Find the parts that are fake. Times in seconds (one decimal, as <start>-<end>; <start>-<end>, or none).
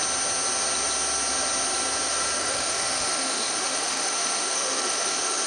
2.4-5.5